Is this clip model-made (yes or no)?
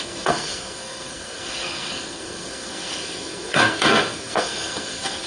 yes